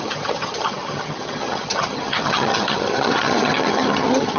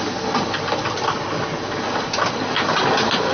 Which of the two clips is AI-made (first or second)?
first